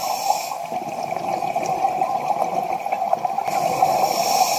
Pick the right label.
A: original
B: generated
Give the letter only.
A